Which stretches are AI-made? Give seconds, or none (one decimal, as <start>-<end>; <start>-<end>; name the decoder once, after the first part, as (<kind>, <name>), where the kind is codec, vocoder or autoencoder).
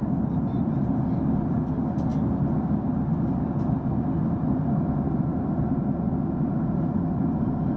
none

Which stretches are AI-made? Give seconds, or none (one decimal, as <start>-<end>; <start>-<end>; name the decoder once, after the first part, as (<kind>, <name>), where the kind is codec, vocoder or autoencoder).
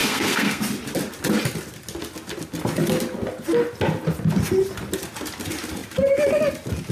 0.0-0.6 (codec, SNAC)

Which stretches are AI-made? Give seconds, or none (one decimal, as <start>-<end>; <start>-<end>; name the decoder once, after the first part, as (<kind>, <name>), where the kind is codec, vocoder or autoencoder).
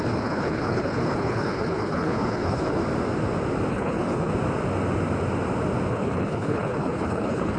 0.0-2.8 (codec, HILCodec); 3.7-4.3; 5.9-7.6